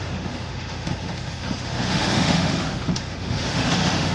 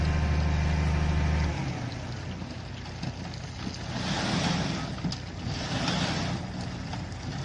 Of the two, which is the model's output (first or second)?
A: first